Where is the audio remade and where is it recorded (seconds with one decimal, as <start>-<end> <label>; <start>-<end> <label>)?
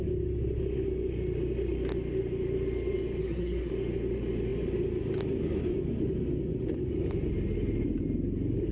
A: 0.0-3.2 recorded; 3.2-3.7 remade; 3.7-8.7 recorded